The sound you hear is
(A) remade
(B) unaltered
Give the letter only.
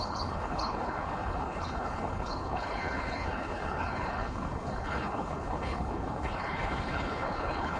A